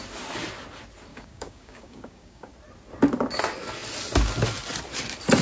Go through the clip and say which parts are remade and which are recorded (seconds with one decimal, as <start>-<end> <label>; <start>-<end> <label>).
0.0-1.1 recorded; 1.1-2.5 remade; 2.5-5.4 recorded